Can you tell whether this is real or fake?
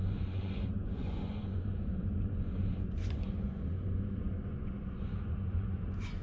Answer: fake